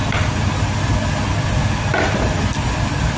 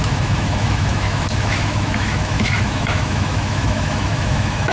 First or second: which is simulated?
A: second